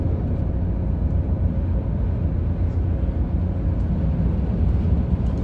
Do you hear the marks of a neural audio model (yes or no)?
no